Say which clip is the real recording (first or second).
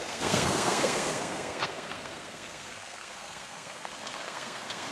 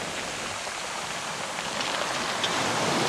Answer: second